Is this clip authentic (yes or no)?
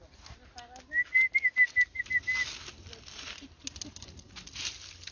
yes